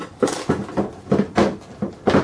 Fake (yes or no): no